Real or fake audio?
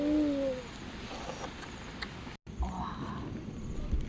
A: real